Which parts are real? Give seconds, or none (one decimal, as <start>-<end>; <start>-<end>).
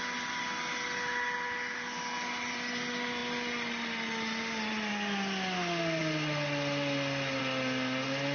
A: 0.0-8.3